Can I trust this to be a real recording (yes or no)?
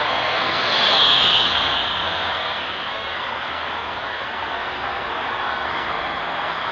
no